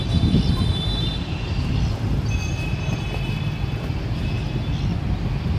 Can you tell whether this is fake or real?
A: real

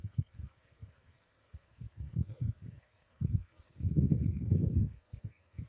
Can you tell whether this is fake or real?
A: fake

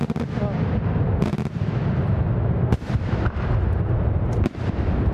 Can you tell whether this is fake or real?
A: real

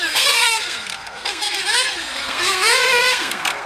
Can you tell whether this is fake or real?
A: fake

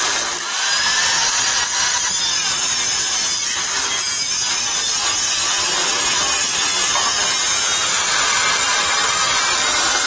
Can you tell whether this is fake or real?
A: real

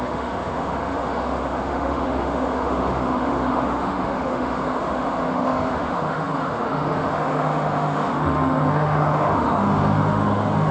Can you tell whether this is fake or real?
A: fake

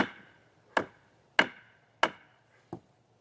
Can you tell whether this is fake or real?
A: real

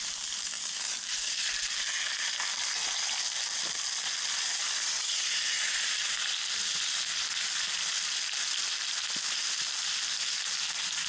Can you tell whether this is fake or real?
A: real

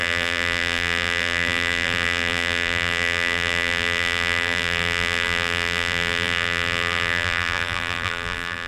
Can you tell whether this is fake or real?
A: fake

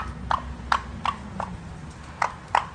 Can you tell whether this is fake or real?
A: real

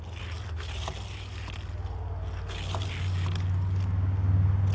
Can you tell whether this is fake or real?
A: real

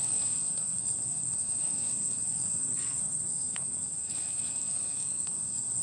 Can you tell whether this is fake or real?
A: fake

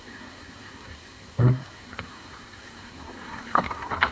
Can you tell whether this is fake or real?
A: fake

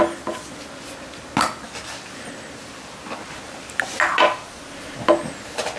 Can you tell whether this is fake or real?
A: real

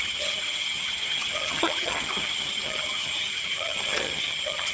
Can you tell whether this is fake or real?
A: fake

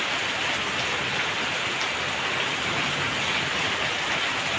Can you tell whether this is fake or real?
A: real